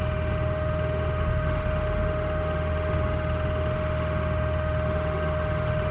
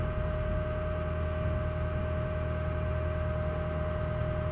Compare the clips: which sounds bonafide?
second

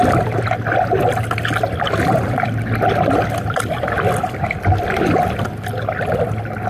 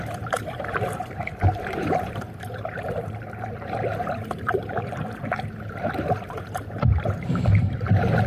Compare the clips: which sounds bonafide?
first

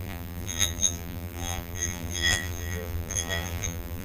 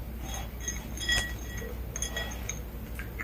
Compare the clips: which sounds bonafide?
second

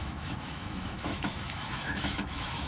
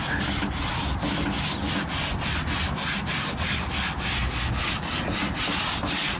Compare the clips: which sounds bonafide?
second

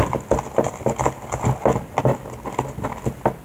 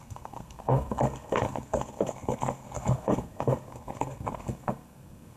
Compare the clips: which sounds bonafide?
first